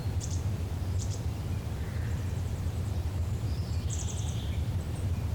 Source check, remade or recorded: remade